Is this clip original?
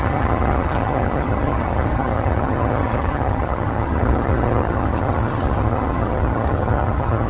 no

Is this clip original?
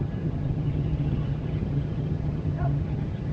no